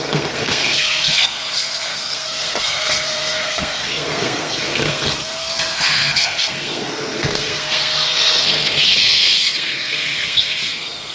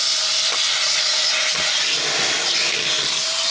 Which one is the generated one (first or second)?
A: first